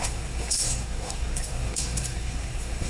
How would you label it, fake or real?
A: fake